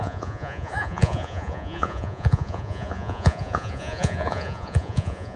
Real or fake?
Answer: fake